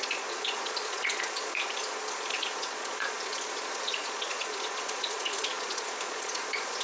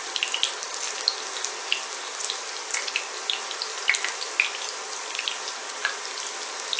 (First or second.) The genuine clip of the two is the second